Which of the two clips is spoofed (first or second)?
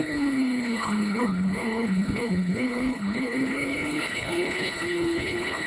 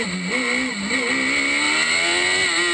first